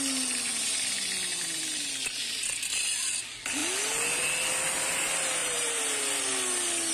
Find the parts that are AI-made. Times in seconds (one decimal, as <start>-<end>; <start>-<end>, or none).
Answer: 1.3-1.9; 5.4-6.0

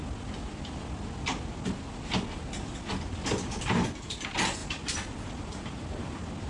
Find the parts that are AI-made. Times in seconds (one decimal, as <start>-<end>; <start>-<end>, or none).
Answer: none